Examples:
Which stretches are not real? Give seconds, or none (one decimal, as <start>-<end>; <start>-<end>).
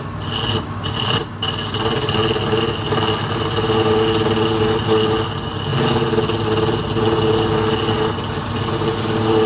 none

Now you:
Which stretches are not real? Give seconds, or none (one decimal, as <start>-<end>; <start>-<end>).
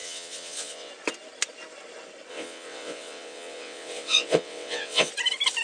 0.0-0.9; 2.3-5.1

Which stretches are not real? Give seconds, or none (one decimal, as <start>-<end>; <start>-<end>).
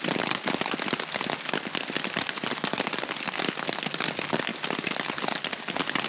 none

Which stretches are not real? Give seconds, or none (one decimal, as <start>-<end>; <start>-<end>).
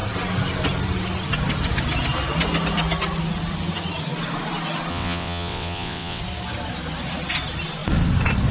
4.9-6.2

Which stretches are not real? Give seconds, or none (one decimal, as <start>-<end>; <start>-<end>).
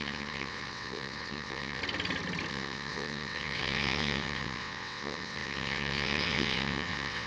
0.0-1.8; 2.5-7.3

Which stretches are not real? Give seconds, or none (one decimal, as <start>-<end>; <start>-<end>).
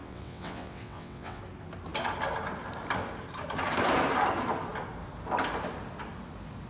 0.0-1.4